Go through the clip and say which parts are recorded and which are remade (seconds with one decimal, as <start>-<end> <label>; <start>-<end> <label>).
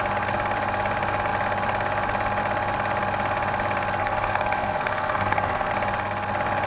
0.0-4.0 recorded; 4.0-5.7 remade; 5.7-6.7 recorded